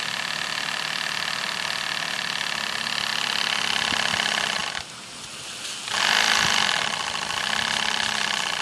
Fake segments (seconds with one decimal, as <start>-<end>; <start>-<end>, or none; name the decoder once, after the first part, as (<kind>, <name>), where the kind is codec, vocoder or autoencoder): none